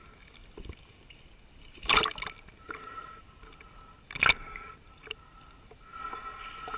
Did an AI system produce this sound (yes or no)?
no